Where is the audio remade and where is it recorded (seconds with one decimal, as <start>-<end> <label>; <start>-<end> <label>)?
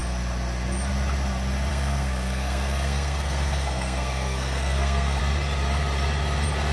0.0-1.7 recorded; 1.7-5.2 remade; 5.2-6.7 recorded